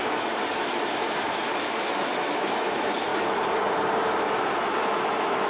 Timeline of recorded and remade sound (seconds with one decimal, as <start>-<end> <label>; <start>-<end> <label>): 0.0-3.1 remade; 3.1-4.8 recorded; 4.8-5.5 remade